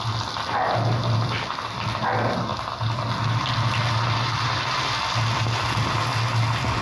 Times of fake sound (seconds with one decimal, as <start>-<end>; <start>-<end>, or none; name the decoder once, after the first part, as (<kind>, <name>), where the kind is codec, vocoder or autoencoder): none

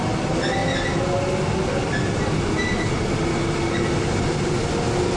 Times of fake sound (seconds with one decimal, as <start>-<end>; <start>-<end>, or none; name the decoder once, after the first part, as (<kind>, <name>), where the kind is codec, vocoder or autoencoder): none

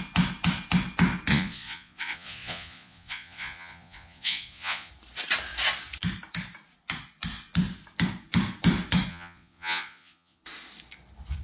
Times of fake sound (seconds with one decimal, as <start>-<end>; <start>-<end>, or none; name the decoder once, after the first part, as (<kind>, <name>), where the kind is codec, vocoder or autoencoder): 1.3-4.9 (vocoder, Vocos); 9.1-10.4

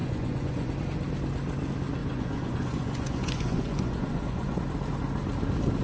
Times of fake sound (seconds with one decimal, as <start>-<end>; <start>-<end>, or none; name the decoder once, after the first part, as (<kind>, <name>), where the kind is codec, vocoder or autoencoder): 0.0-0.7 (vocoder, Vocos); 2.0-4.6